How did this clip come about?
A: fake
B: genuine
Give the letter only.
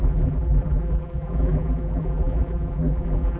A